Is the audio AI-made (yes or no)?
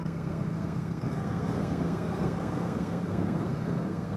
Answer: yes